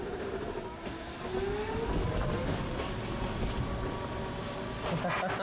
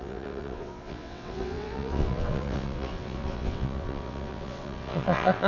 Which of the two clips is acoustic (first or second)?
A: first